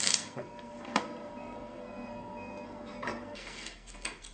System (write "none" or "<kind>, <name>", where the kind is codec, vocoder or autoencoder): codec, SNAC